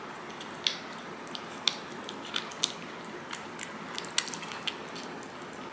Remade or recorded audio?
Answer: recorded